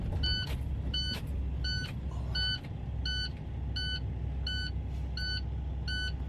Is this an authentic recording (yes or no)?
yes